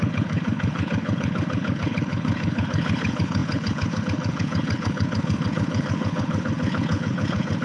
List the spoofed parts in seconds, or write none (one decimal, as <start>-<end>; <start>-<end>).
0.0-7.6